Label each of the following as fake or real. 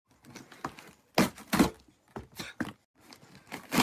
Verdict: real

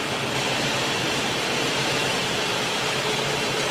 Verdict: fake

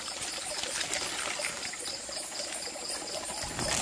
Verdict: real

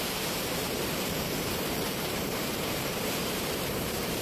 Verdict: fake